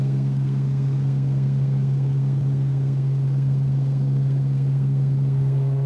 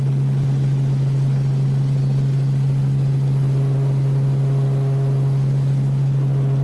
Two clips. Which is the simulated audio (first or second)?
first